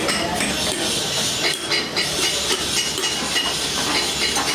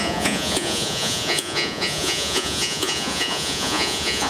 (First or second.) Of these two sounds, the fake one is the second